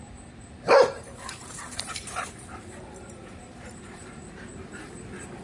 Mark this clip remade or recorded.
remade